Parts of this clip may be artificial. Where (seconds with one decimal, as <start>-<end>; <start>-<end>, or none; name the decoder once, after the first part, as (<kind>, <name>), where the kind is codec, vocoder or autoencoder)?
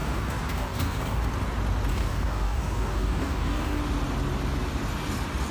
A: 0.0-1.2 (codec, DAC); 1.9-3.8